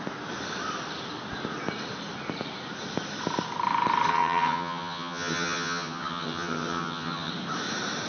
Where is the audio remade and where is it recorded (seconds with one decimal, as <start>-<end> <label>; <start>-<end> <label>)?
0.0-4.1 recorded; 4.1-7.3 remade; 7.3-8.1 recorded

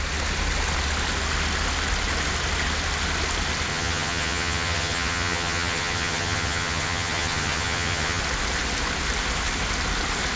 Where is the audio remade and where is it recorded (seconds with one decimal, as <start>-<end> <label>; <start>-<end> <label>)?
0.0-3.7 recorded; 3.7-8.2 remade; 8.2-10.4 recorded